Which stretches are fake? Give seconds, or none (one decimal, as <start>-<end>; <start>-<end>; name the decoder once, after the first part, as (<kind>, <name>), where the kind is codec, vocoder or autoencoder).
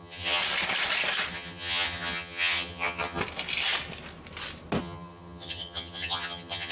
0.0-0.4 (vocoder, HiFi-GAN); 1.3-3.2; 4.8-6.7